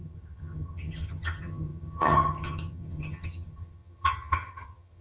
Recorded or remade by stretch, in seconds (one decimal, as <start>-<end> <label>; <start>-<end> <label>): 0.0-5.0 remade